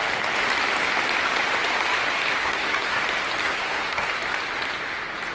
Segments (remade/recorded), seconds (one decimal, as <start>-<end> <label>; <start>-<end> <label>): 0.0-2.4 recorded; 2.4-3.0 remade; 3.0-3.4 recorded; 3.4-4.1 remade; 4.1-5.3 recorded